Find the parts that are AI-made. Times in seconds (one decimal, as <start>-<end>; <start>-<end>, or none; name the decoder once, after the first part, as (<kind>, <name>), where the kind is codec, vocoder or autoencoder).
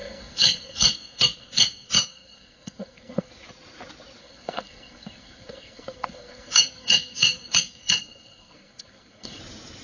0.0-3.3 (codec, SNAC); 4.2-9.4